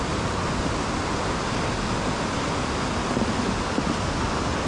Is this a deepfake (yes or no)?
no